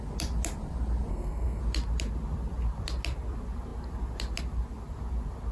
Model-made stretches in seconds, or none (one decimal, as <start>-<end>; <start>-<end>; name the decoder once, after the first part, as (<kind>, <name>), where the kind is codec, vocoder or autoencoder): 1.1-1.6 (codec, SNAC)